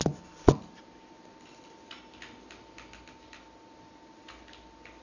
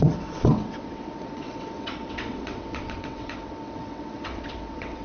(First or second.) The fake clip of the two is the second